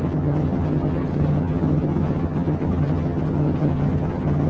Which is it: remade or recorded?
remade